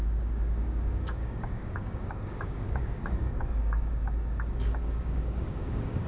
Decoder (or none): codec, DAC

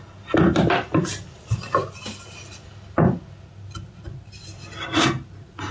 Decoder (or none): none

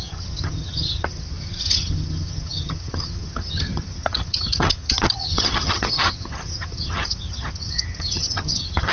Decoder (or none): vocoder, HiFi-GAN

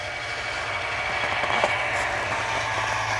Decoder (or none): none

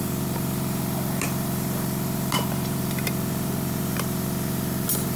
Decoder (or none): vocoder, BigVGAN v2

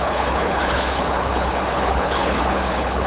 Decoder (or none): codec, HILCodec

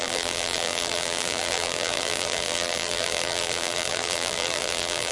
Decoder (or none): vocoder, BigVGAN v2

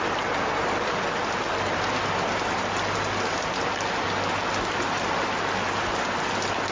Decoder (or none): none